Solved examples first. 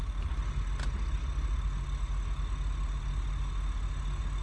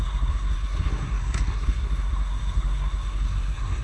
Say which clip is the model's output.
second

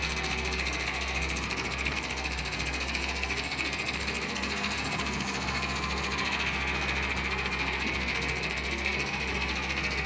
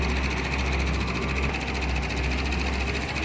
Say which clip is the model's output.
first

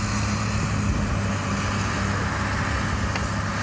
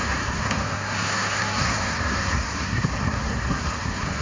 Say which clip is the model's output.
second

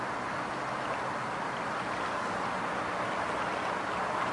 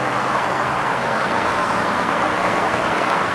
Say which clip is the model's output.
second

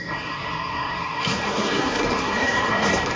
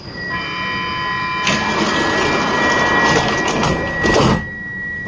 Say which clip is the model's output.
first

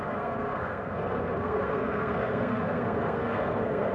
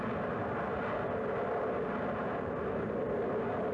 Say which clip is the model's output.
first